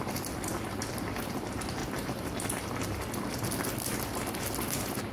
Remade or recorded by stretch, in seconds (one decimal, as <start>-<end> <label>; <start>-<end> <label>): 0.0-5.1 recorded